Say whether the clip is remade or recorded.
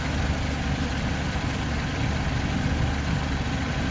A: recorded